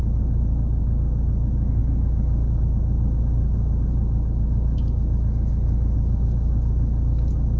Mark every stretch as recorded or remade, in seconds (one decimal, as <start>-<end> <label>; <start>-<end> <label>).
0.0-7.6 recorded